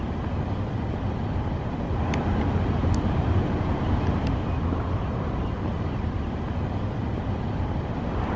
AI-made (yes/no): no